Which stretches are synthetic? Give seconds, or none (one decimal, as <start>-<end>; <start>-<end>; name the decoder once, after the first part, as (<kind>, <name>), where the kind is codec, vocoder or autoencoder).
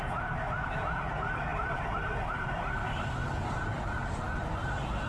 0.0-5.1 (vocoder, BigVGAN v2)